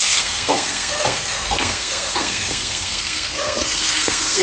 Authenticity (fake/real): fake